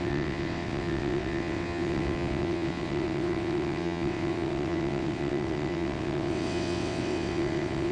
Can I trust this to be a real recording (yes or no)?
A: no